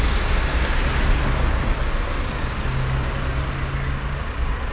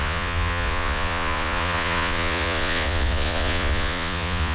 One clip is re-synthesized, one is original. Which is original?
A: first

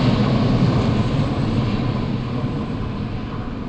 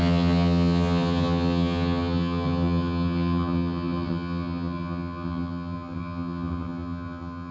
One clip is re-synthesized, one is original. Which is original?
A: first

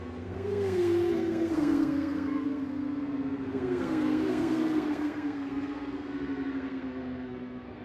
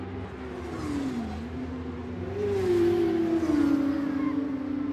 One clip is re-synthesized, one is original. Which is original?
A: second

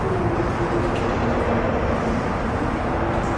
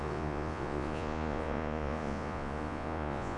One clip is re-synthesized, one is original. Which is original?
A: first